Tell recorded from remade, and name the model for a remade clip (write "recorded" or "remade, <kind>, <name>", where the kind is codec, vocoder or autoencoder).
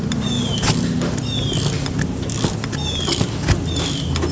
recorded